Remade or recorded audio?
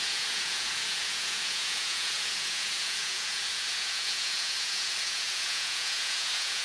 remade